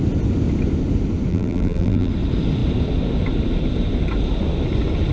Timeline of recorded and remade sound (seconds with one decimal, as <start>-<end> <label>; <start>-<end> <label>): 0.0-1.3 recorded; 1.3-2.1 remade; 2.1-5.1 recorded